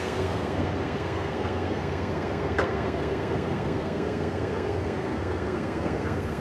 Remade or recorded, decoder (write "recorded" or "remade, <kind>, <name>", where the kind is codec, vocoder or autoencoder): remade, codec, SNAC